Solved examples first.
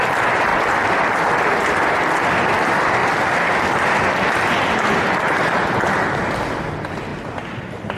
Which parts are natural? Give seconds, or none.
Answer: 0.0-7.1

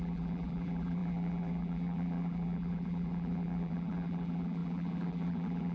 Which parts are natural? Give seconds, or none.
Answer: none

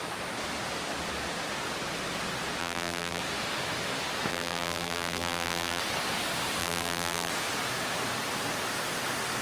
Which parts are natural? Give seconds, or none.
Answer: 0.0-2.6; 3.2-4.3; 5.8-6.6; 7.3-9.4

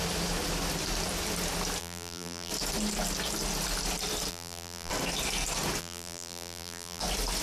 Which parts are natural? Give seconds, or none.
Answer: 0.0-1.8; 2.5-4.3; 4.9-5.8; 7.0-7.4